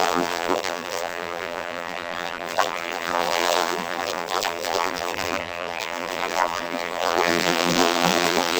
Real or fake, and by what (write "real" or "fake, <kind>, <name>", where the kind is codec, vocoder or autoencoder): fake, vocoder, BigVGAN v2